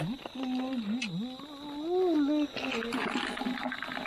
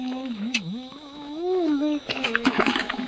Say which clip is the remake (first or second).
second